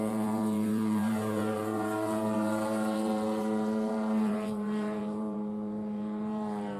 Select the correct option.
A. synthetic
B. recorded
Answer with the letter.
A